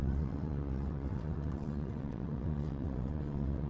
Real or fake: fake